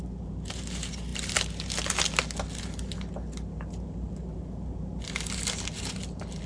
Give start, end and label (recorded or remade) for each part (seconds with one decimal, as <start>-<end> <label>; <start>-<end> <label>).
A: 0.0-6.5 recorded